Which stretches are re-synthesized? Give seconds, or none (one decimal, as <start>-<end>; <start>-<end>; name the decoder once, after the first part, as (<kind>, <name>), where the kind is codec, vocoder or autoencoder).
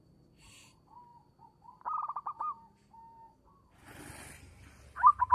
none